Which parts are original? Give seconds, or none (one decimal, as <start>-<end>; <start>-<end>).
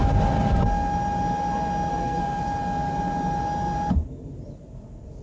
0.0-1.9; 2.4-5.2